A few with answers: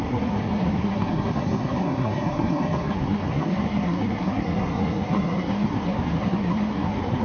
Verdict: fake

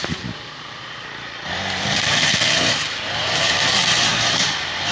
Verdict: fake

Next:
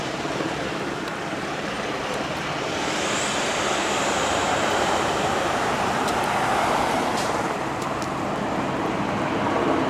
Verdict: fake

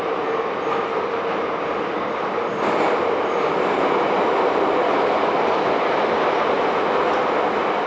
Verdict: real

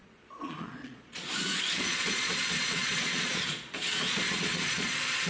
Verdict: fake